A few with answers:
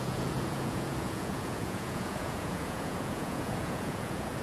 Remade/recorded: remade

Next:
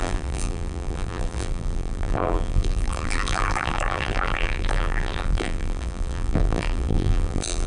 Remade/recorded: remade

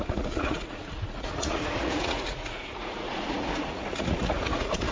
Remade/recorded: remade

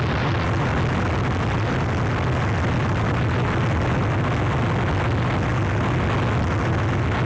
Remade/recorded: recorded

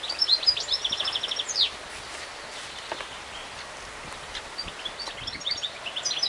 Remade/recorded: recorded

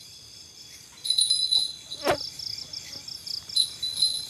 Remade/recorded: recorded